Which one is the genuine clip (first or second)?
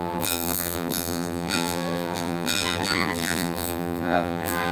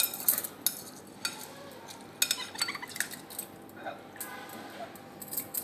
second